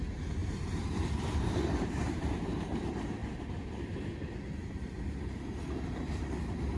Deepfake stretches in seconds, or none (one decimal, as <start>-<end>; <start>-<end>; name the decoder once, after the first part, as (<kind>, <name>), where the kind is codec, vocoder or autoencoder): 0.4-2.8 (vocoder, BigVGAN v2); 4.6-5.6